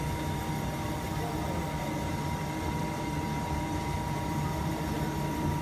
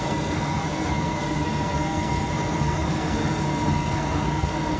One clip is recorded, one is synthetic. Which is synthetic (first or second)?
second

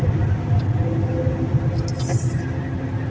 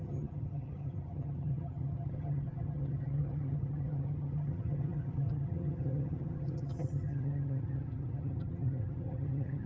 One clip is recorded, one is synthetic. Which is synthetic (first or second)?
second